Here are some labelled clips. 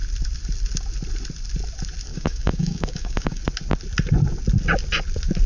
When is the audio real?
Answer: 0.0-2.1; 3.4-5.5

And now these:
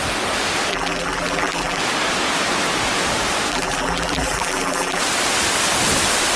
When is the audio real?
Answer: 0.0-0.7; 1.8-3.5; 5.0-6.4

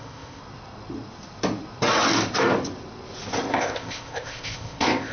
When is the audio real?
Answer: 0.4-3.5

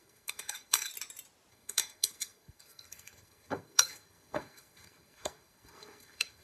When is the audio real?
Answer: 0.9-1.5

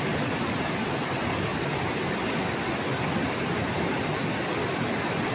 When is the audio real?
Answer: 0.0-5.3

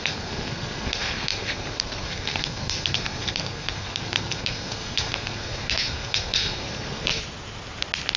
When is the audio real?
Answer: 7.2-8.2

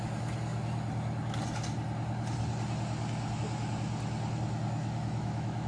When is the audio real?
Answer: 0.0-4.8

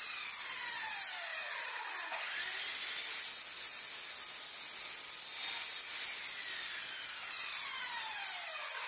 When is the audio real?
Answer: 0.0-8.9